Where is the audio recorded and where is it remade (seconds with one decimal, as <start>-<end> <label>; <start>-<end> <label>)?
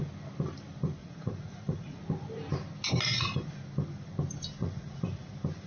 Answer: 0.0-1.0 recorded; 1.0-2.0 remade; 2.0-4.6 recorded; 4.6-5.3 remade; 5.3-5.7 recorded